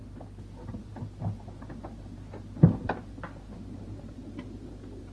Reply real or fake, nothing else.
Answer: real